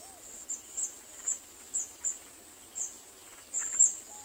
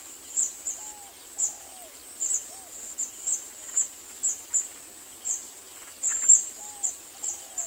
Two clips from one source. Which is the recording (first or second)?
first